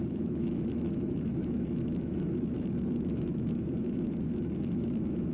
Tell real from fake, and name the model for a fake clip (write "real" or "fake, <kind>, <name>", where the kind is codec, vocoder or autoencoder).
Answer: fake, autoencoder, DAC-VAE